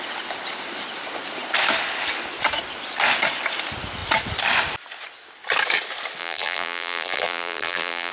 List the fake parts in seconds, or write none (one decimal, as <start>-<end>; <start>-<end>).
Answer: 6.2-8.1